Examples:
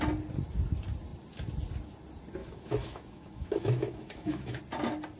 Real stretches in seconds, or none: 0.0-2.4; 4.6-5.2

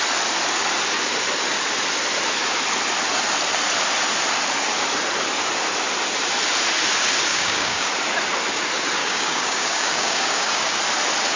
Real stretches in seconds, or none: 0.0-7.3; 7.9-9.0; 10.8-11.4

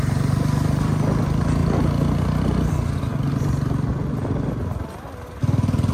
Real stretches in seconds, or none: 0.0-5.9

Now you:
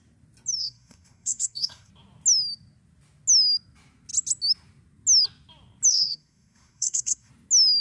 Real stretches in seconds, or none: 0.0-0.6; 1.9-5.9; 7.3-7.8